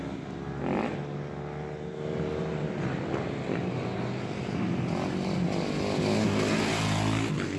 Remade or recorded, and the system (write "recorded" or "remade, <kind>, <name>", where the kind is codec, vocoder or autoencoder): recorded